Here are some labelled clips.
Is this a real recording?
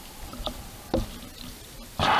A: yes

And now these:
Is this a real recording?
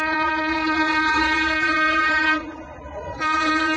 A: no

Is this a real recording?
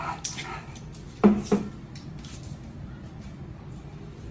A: yes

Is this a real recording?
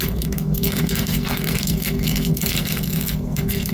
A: no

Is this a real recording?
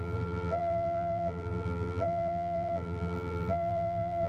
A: no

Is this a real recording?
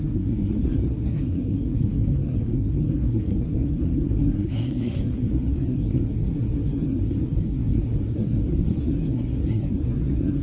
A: no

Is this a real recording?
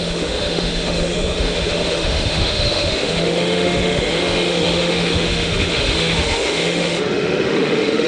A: no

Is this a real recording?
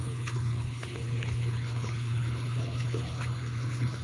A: no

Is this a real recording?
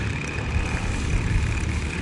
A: yes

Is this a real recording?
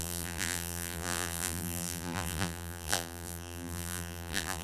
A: no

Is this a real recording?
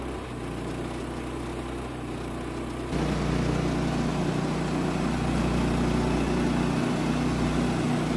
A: yes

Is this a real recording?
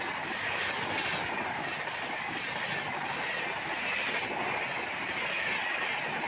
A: yes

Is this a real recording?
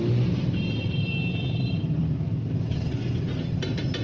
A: yes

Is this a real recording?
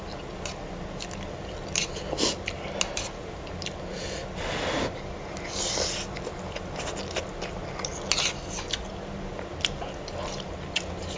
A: yes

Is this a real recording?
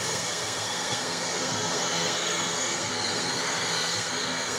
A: no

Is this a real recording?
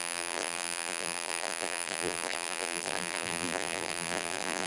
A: no